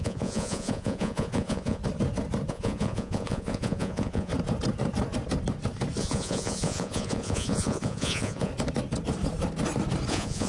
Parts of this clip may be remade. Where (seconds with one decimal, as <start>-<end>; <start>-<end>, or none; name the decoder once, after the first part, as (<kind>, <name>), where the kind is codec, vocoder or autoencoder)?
0.0-1.8 (vocoder, Vocos); 2.5-4.3; 6.0-8.5; 10.1-10.5